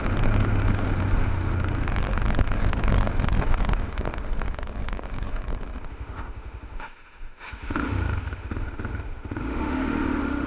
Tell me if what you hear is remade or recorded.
remade